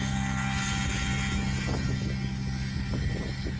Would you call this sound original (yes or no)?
yes